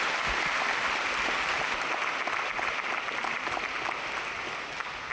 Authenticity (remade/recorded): recorded